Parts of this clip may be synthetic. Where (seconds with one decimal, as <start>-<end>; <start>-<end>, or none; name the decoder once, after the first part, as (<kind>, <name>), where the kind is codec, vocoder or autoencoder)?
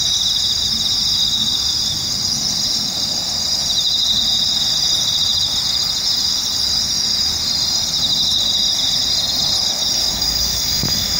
10.0-11.2 (codec, DAC)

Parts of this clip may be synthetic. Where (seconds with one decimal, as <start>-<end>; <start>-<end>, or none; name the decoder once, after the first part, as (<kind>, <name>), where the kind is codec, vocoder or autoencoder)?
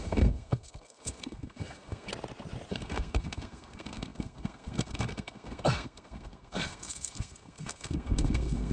0.0-2.1 (codec, SNAC); 2.7-8.7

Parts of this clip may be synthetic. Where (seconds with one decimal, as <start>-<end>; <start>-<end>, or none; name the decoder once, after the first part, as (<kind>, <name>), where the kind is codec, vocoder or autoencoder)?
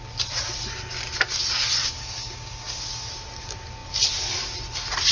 1.8-2.8 (codec, DAC)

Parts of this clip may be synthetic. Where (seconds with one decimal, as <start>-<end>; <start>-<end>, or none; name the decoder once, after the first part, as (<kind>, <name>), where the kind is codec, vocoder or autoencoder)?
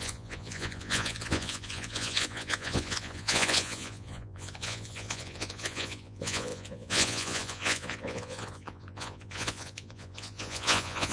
0.0-11.1 (vocoder, Vocos)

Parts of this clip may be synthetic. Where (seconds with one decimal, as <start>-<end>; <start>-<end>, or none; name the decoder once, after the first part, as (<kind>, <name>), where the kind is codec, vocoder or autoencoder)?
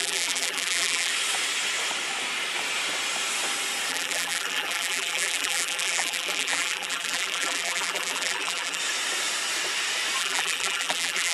0.0-1.1 (vocoder, BigVGAN v2); 3.9-8.8; 10.2-11.3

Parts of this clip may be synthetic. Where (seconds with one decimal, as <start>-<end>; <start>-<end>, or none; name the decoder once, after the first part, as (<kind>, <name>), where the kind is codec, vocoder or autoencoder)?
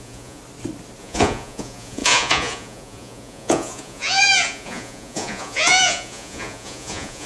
0.0-0.4 (vocoder, Vocos); 1.0-7.3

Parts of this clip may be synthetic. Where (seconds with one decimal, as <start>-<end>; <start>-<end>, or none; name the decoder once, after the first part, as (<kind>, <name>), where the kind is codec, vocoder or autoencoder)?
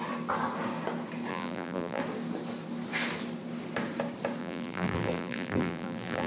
1.3-2.0 (vocoder, BigVGAN v2); 4.4-6.3